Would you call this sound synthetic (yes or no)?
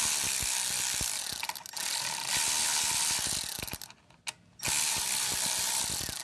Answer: no